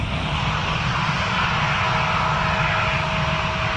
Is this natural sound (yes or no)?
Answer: yes